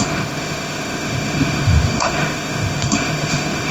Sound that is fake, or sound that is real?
fake